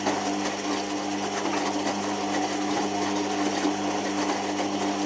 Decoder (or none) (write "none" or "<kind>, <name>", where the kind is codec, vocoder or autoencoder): none